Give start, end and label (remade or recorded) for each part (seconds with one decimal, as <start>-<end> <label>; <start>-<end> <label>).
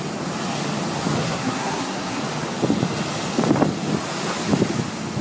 0.0-1.2 recorded; 1.2-2.2 remade; 2.2-5.2 recorded